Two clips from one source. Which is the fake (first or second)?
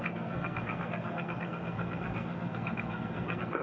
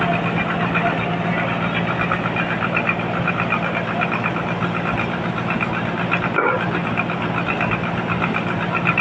first